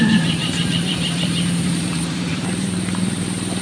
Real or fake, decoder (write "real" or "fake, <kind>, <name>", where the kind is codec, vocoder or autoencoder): fake, vocoder, BigVGAN v2